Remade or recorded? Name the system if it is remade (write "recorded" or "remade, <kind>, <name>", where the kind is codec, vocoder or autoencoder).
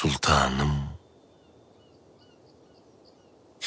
recorded